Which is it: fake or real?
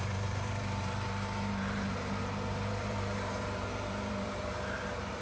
fake